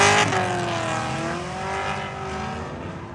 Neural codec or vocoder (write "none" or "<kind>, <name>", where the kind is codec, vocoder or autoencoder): none